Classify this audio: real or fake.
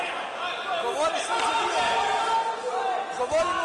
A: real